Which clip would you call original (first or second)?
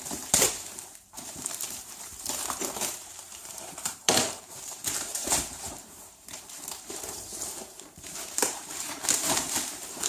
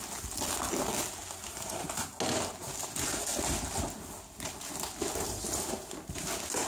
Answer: second